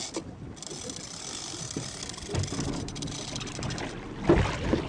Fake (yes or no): no